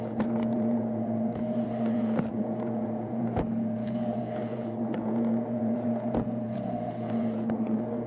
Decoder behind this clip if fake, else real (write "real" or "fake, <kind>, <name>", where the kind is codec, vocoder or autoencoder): fake, vocoder, Vocos